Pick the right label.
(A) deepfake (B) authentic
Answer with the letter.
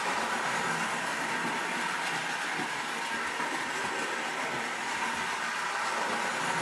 B